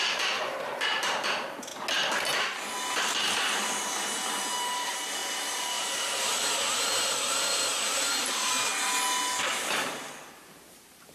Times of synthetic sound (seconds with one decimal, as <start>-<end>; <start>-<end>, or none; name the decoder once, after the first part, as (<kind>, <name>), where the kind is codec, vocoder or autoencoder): 0.0-1.7 (vocoder, BigVGAN v2); 3.0-8.7; 9.6-11.1